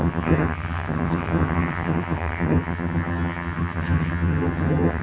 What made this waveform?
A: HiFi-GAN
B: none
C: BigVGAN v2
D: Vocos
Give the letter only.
A